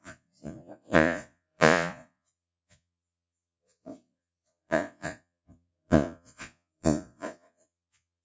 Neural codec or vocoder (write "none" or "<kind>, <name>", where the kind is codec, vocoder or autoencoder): vocoder, Vocos